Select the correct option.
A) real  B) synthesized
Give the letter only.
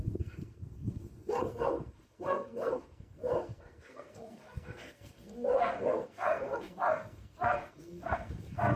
B